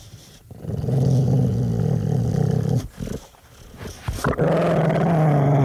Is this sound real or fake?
real